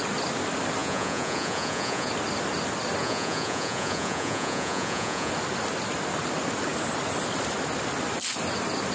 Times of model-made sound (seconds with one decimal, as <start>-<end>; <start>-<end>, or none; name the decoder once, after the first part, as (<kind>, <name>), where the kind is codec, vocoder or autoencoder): 0.8-2.1 (vocoder, Vocos); 3.0-5.3